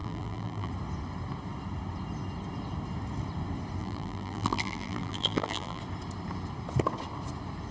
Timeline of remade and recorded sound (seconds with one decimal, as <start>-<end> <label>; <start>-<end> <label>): 0.0-0.7 remade; 0.7-3.8 recorded; 3.8-5.8 remade; 5.8-7.7 recorded